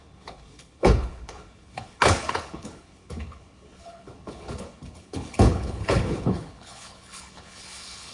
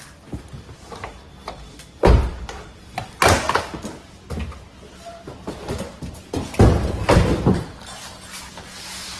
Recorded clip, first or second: second